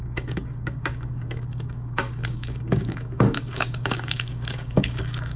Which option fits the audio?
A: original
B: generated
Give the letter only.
B